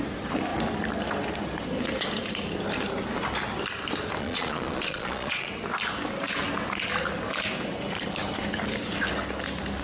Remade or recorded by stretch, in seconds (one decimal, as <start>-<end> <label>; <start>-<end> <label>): 0.0-4.2 recorded; 4.2-5.5 remade; 5.5-9.8 recorded